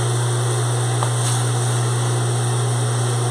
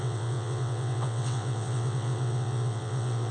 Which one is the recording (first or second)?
first